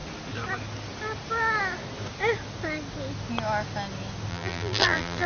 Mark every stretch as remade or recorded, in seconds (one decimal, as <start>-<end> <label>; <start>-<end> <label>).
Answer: 0.0-4.3 recorded; 4.3-5.3 remade